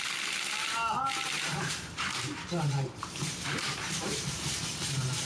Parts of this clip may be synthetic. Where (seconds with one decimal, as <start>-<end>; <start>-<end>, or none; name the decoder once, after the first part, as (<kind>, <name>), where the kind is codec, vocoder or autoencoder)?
1.5-4.6 (vocoder, BigVGAN v2)